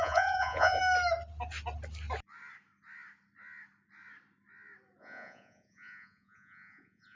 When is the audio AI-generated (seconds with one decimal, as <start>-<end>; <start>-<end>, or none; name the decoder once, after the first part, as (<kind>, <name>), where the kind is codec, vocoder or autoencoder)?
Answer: 0.0-0.8 (vocoder, Vocos); 5.0-7.2